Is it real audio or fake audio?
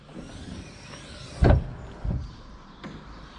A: real